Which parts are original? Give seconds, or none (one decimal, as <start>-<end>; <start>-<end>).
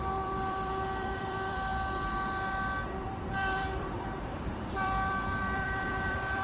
1.7-3.0